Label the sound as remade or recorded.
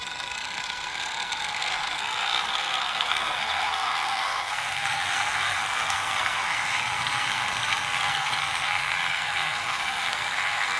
remade